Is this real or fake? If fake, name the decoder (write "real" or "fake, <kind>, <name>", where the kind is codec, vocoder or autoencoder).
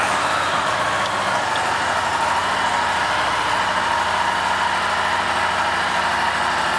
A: real